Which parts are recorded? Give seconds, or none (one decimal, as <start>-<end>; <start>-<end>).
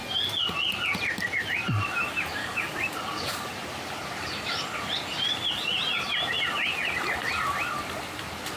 0.0-2.4; 3.5-8.6